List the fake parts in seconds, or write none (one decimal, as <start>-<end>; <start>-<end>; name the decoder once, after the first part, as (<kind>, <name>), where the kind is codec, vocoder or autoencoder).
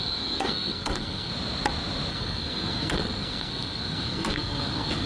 0.0-1.3 (codec, SNAC); 2.1-5.1